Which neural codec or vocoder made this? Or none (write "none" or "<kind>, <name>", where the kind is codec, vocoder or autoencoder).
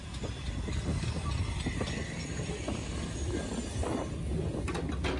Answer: none